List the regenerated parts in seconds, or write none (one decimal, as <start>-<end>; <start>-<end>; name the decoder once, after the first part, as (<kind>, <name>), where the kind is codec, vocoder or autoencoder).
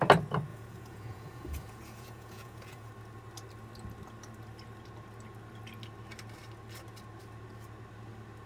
0.5-2.9 (vocoder, Vocos)